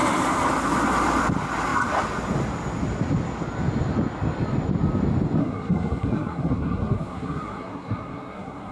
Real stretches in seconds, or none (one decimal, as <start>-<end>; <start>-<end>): 0.0-5.4